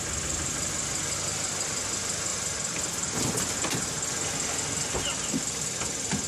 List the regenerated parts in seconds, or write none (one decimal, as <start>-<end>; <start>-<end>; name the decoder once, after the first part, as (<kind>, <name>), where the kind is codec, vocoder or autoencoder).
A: none